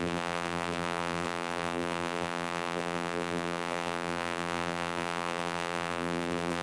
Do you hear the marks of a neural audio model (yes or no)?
yes